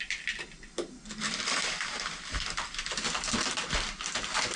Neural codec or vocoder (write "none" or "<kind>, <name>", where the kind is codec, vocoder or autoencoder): none